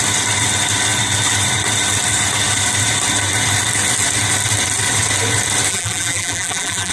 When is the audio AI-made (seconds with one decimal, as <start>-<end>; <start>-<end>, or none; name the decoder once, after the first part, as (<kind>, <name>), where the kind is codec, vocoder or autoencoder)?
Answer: 5.7-6.9 (vocoder, BigVGAN v2)